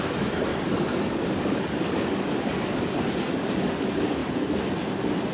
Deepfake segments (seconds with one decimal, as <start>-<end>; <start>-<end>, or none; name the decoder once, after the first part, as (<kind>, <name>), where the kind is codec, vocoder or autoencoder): 0.5-3.7 (codec, DAC)